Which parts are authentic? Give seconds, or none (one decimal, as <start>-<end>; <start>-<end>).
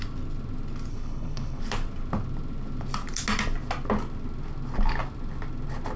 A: 0.0-0.9; 1.6-6.0